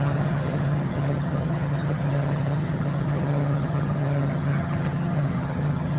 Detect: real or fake fake